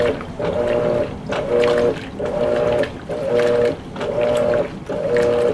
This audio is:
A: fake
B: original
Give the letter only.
B